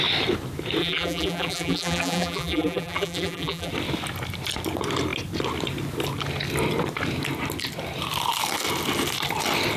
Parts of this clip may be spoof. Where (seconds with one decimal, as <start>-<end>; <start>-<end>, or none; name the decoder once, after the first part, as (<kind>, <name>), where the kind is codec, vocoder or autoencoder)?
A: 0.8-3.7 (vocoder, BigVGAN v2)